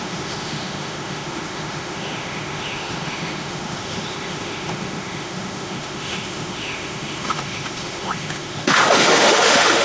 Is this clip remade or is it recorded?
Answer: remade